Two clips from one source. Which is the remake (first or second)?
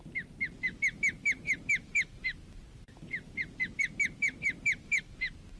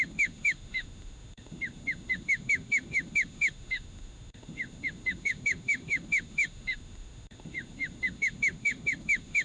second